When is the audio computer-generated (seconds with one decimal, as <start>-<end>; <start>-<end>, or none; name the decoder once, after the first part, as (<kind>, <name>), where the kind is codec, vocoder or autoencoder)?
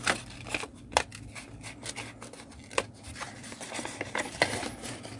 none